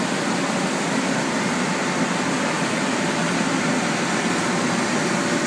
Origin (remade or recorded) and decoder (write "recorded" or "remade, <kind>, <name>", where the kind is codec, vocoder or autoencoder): recorded